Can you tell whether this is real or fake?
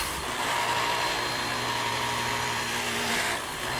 fake